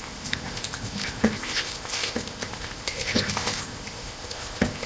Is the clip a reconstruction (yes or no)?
yes